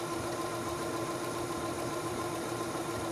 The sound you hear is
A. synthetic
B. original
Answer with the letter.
A